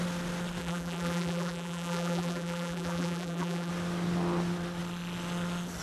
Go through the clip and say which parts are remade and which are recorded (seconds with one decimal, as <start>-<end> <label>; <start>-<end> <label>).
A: 0.0-0.6 recorded; 0.6-3.7 remade; 3.7-5.8 recorded